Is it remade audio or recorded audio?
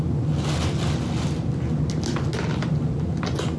recorded